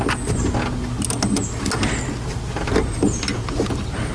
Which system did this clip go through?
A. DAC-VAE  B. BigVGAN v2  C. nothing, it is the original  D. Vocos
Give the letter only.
C